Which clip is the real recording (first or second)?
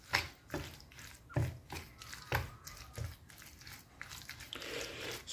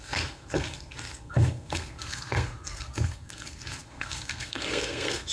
first